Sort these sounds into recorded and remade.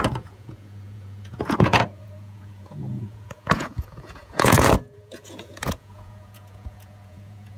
remade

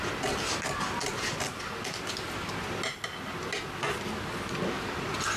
recorded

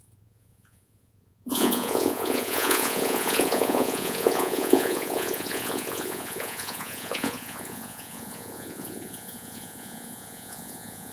remade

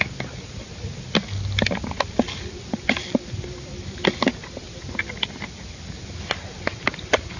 recorded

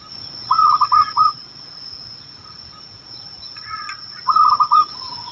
remade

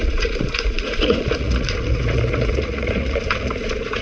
remade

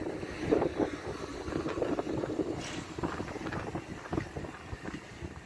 recorded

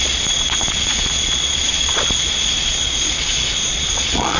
remade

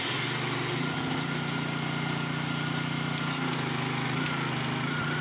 recorded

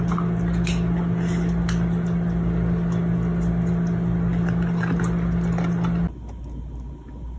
recorded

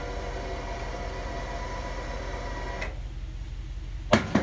recorded